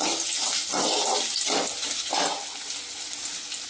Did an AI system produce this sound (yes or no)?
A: no